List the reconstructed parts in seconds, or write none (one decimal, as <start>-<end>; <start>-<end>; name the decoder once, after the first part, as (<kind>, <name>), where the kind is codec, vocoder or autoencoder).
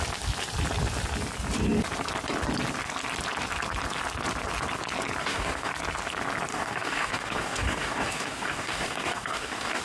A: 5.2-5.7 (codec, DAC); 6.5-9.8